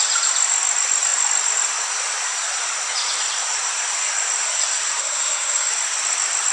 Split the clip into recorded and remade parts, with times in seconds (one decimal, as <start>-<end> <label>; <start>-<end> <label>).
0.0-5.0 recorded; 5.0-5.7 remade; 5.7-6.5 recorded